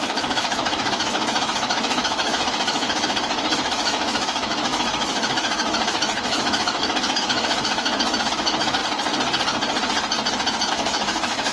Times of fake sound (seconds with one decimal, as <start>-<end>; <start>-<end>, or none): 0.0-8.8; 10.7-11.5